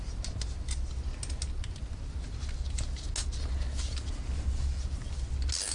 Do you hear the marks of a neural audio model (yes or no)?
no